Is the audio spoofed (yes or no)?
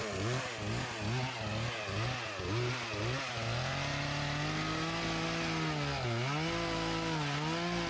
no